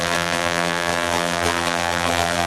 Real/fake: fake